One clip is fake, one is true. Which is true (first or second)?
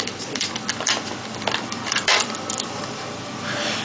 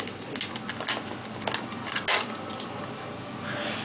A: second